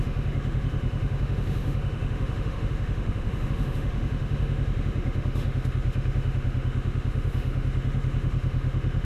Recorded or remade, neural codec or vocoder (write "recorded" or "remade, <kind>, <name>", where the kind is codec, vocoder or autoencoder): remade, autoencoder, DAC-VAE